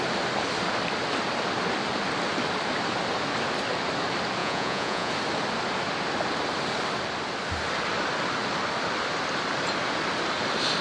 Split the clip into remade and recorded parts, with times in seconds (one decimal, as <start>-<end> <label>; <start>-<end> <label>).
0.0-4.4 recorded; 4.4-5.1 remade; 5.1-10.8 recorded